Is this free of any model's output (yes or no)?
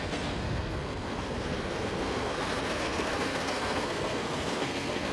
no